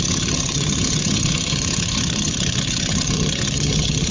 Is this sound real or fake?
fake